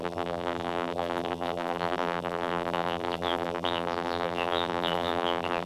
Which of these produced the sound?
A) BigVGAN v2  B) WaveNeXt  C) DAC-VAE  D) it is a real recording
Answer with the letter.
A